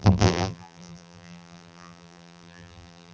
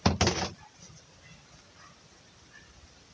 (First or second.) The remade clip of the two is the first